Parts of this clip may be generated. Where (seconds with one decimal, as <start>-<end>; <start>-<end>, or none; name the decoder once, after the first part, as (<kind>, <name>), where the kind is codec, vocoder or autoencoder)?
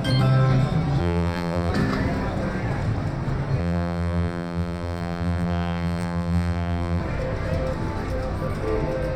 1.0-1.7 (vocoder, BigVGAN v2); 3.6-7.0